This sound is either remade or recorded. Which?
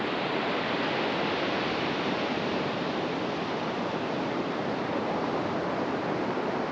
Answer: recorded